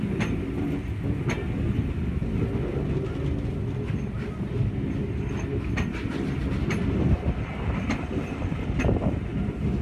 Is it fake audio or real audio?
real